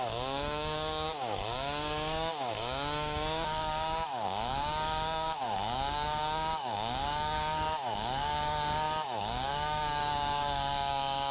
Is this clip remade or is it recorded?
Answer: remade